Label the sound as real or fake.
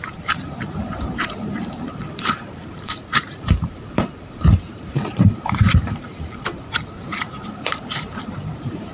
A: fake